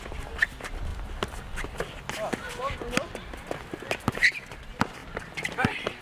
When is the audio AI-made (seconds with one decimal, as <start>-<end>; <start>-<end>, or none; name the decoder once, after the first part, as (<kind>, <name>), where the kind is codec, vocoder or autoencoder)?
0.0-0.9 (vocoder, BigVGAN v2); 4.5-6.0